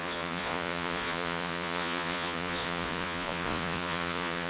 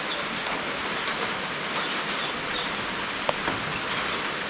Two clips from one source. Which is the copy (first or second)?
first